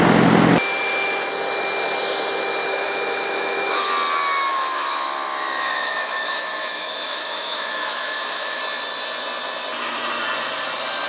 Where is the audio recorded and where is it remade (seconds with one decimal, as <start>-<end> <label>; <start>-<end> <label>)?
0.0-2.7 recorded; 2.7-3.9 remade; 3.9-4.5 recorded; 4.5-8.6 remade; 8.6-11.1 recorded